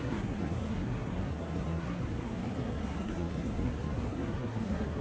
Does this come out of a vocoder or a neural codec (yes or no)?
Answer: yes